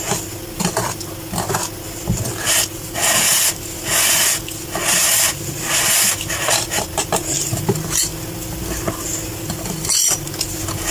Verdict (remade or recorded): recorded